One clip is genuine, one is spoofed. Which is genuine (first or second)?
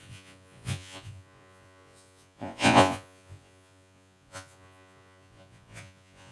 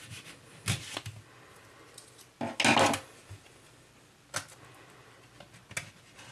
second